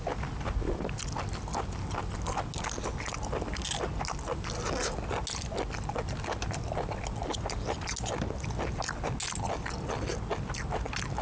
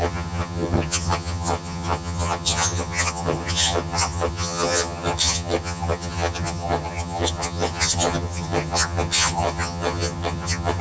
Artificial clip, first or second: second